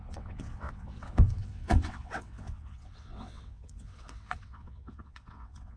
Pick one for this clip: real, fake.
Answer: fake